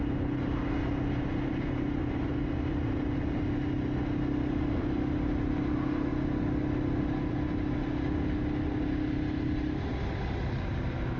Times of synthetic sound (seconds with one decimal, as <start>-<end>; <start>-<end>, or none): none